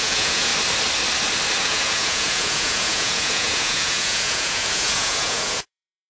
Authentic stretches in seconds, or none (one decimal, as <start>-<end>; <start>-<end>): 0.5-1.6